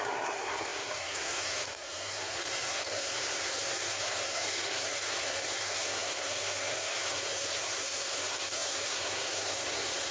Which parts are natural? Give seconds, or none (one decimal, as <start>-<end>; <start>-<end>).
none